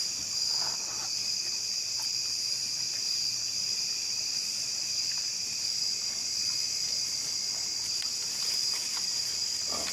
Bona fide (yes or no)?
yes